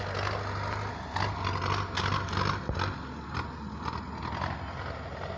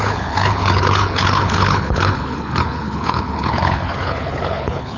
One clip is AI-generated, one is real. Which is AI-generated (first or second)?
second